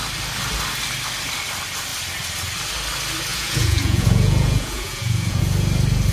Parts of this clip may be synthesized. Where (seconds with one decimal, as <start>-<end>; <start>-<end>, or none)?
3.3-5.4